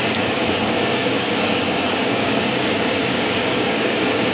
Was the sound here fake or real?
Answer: fake